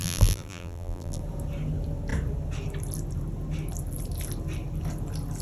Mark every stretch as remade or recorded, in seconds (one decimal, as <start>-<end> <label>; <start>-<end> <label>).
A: 0.0-1.2 remade; 1.2-5.4 recorded